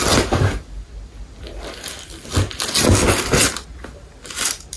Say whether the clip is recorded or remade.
recorded